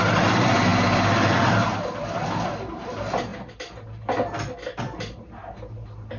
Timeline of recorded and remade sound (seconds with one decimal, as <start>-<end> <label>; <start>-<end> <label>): 0.0-6.2 recorded